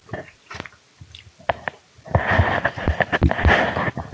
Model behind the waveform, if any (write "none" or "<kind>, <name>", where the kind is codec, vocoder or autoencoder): none